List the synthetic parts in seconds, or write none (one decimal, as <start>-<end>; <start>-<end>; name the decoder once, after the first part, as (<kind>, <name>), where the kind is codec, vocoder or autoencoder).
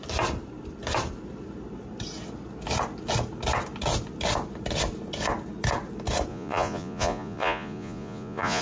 6.3-8.6 (vocoder, Vocos)